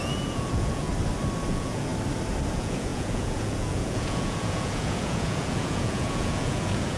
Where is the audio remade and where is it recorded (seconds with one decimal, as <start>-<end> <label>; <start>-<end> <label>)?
0.0-0.9 remade; 0.9-1.5 recorded; 1.5-1.9 remade; 1.9-2.5 recorded; 2.5-7.0 remade